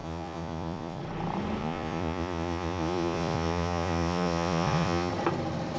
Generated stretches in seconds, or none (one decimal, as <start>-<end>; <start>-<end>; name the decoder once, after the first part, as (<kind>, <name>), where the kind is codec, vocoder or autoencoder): 0.0-1.0 (vocoder, Vocos); 1.6-5.1